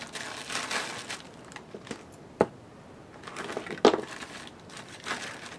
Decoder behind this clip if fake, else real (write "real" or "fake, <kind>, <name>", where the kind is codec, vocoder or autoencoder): real